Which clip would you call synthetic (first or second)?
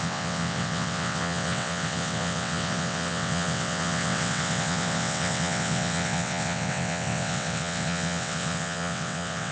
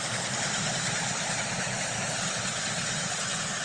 first